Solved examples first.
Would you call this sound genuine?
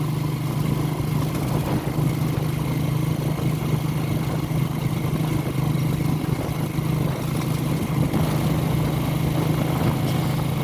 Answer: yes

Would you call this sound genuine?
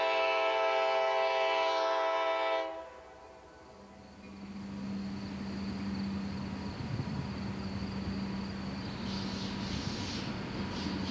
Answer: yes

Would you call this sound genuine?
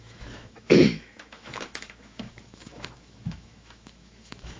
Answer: no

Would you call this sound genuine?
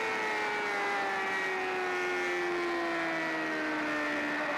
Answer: yes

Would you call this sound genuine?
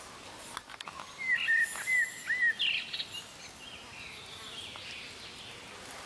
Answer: yes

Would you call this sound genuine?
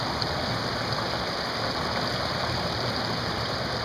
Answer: yes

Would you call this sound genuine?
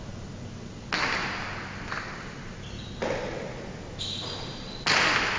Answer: yes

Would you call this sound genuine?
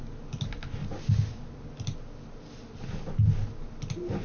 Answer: yes